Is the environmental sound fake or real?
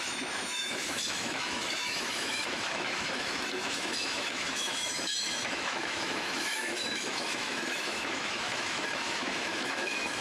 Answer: fake